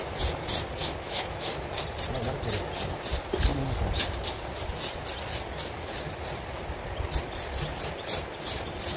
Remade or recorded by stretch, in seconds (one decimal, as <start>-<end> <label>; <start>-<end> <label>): 0.0-0.8 recorded; 0.8-1.5 remade; 1.5-9.0 recorded